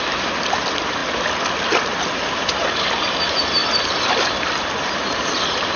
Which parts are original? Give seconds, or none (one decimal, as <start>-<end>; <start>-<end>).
1.0-2.1; 3.6-4.1